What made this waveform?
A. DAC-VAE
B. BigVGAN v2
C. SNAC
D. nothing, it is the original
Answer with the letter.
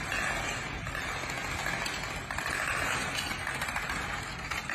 D